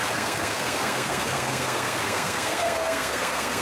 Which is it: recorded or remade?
remade